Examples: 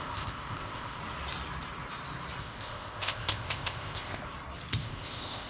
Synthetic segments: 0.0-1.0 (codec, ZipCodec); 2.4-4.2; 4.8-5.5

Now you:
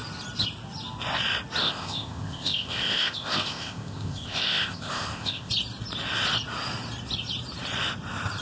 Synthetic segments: 1.6-5.5 (codec, ZipCodec)

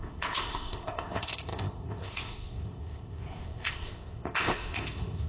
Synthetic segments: 0.0-5.3 (codec, ZipCodec)

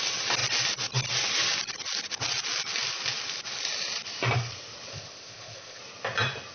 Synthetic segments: 4.9-5.8 (codec, ZipCodec)

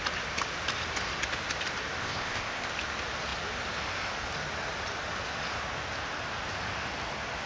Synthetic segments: 2.0-2.7 (codec, ZipCodec)